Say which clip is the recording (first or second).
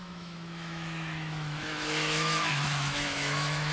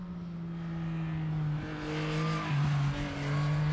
second